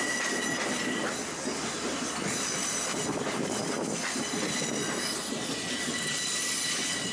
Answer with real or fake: real